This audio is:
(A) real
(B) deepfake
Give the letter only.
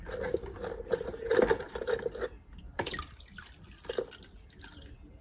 A